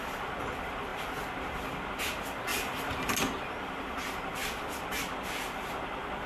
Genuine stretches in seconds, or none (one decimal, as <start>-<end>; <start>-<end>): 0.0-2.5; 3.1-6.3